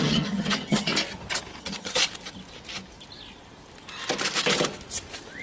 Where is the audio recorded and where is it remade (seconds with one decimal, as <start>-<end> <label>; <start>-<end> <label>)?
0.0-0.9 remade; 0.9-1.6 recorded; 1.6-2.0 remade; 2.0-5.4 recorded